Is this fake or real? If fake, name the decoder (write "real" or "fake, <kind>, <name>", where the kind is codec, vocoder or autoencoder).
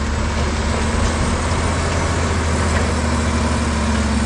real